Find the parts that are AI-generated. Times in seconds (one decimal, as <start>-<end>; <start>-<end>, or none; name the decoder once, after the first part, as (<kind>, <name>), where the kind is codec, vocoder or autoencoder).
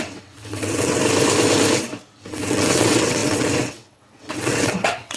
0.0-1.0 (vocoder, WaveNeXt); 2.3-5.2